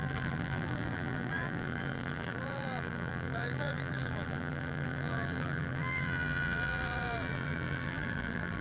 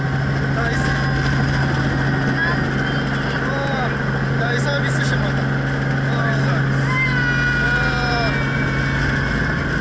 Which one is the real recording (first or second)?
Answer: second